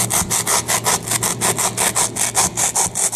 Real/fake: real